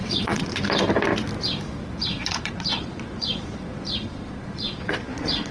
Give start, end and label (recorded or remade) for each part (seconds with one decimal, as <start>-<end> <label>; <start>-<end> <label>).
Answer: 0.0-0.6 remade; 0.6-2.1 recorded; 2.1-5.5 remade